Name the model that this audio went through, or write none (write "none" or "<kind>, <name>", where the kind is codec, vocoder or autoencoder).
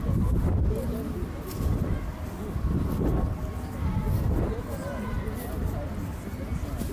none